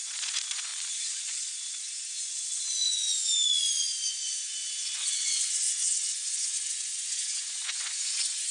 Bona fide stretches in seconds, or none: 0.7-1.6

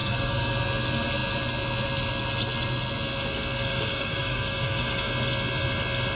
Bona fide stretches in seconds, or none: 0.5-3.7; 5.1-6.2